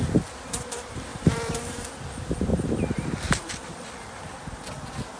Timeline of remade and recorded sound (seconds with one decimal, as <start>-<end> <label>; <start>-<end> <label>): 0.0-1.1 recorded; 1.1-1.7 remade; 1.7-2.5 recorded; 2.5-4.4 remade; 4.4-5.2 recorded